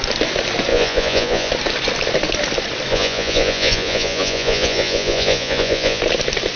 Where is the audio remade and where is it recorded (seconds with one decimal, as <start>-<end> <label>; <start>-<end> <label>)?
0.0-0.7 recorded; 0.7-1.5 remade; 1.5-2.9 recorded; 2.9-6.0 remade; 6.0-6.6 recorded